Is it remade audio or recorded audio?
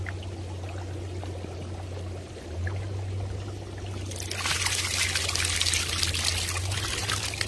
recorded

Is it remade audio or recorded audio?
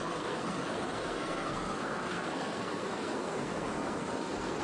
remade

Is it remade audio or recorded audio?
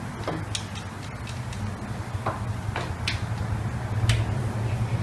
recorded